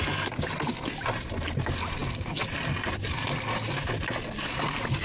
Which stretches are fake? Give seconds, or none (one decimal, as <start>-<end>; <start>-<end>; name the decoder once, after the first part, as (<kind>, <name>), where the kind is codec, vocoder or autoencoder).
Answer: none

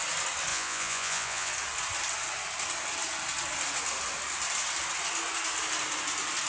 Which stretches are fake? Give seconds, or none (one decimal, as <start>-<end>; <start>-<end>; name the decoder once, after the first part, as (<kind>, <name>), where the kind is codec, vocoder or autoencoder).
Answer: 0.5-1.5 (vocoder, Vocos)

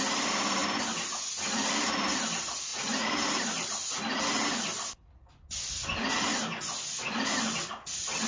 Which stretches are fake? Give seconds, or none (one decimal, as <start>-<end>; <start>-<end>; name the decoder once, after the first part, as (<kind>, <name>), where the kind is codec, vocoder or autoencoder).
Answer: none

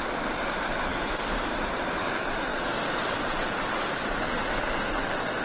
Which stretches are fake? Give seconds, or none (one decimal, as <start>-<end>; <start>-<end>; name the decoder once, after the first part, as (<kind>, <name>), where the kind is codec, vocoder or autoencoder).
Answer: none

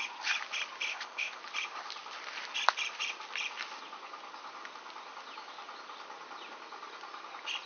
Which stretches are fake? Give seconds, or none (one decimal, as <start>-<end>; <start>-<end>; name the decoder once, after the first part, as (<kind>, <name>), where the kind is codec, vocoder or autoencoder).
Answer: 0.9-1.4 (codec, ZipCodec)

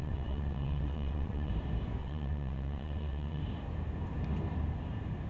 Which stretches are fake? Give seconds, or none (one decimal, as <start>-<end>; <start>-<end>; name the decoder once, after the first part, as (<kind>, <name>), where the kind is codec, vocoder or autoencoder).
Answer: 0.0-1.5 (vocoder, WaveNeXt); 2.0-3.4

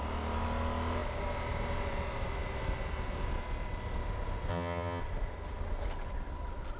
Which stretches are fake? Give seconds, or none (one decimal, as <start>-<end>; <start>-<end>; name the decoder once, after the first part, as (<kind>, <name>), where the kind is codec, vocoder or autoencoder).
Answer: 4.5-5.0 (vocoder, HiFi-GAN)

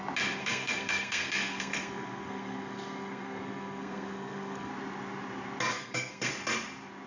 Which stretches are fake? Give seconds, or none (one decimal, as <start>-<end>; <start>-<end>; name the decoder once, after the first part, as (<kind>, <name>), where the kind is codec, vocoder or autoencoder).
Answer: 0.4-4.7 (codec, SNAC); 5.7-6.3